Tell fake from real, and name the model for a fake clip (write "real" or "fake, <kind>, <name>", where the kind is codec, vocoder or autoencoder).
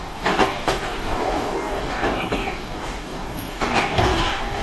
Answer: fake, codec, DAC